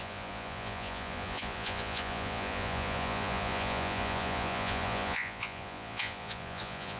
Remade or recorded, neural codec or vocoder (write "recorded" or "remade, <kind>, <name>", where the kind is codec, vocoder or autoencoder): remade, vocoder, Vocos